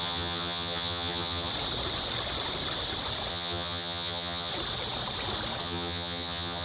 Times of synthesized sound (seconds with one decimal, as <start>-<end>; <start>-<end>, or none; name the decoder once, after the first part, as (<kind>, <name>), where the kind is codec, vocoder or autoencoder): 0.0-1.5 (vocoder, HiFi-GAN); 3.3-4.5; 5.6-6.6